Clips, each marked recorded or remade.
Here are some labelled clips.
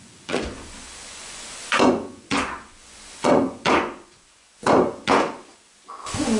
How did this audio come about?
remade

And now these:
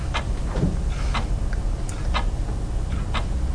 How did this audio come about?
recorded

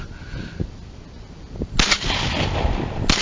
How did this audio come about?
recorded